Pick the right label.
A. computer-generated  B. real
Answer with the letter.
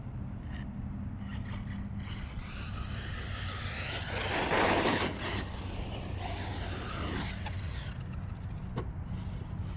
B